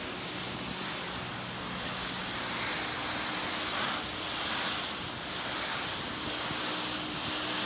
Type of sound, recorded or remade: recorded